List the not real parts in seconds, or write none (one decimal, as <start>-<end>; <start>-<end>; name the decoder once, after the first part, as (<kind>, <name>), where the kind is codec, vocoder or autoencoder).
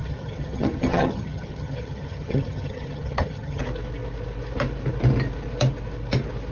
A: 0.0-3.6 (vocoder, HiFi-GAN)